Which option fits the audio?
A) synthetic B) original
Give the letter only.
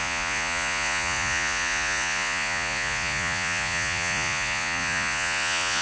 A